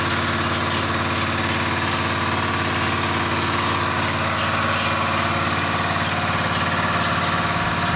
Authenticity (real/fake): real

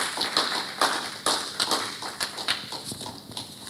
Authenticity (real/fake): real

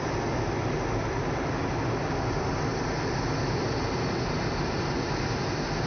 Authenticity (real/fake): real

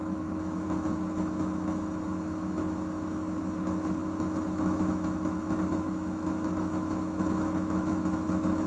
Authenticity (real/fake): fake